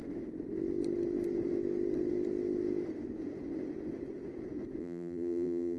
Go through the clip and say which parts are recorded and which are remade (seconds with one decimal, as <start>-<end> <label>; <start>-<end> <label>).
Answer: 0.0-4.8 recorded; 4.8-5.8 remade